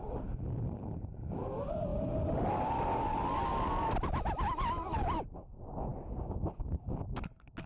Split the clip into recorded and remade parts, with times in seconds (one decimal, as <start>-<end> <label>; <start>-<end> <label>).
0.0-7.7 recorded